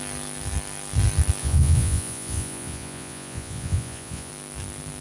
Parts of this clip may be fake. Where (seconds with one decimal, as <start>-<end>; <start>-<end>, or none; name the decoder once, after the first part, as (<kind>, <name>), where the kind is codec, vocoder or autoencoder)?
1.4-4.3 (vocoder, Vocos)